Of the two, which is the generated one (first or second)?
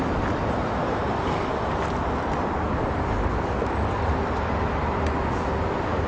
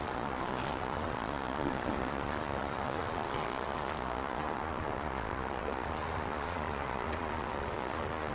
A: second